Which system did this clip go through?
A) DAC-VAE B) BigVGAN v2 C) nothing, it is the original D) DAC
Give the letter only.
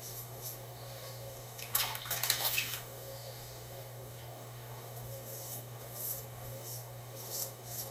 D